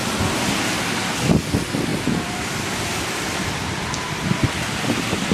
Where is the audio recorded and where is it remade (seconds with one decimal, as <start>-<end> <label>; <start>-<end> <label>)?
0.0-1.9 recorded; 1.9-5.3 remade